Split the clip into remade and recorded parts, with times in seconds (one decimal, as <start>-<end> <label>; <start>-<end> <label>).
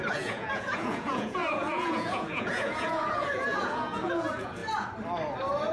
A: 0.0-4.6 remade; 4.6-5.7 recorded